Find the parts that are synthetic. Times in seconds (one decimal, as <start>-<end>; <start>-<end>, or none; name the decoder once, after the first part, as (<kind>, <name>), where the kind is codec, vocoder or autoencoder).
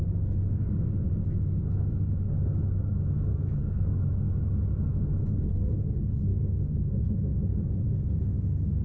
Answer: 3.3-4.0 (codec, SNAC); 6.3-7.1